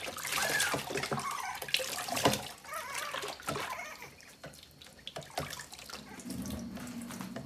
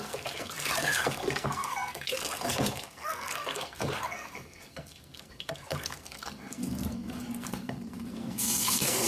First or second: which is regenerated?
second